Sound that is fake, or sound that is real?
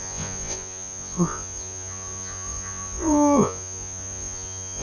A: fake